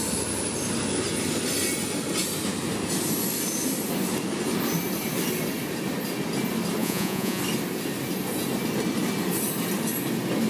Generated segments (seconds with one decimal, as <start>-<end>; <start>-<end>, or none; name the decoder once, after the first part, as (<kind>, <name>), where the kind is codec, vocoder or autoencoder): 6.8-7.4 (vocoder, Vocos)